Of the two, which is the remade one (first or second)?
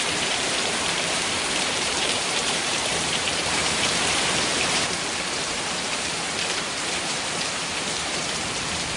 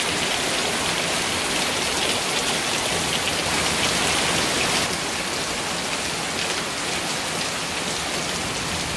first